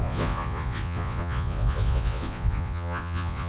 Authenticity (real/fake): fake